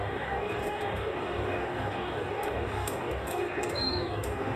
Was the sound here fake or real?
fake